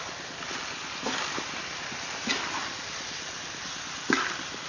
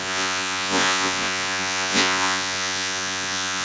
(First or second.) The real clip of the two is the first